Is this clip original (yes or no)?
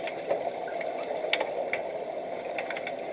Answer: yes